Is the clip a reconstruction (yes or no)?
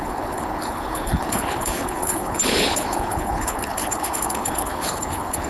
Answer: yes